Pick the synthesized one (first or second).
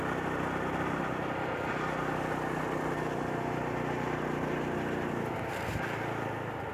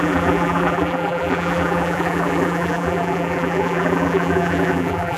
second